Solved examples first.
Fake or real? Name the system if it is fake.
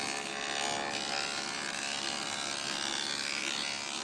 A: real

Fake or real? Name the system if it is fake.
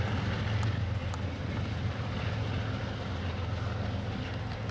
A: real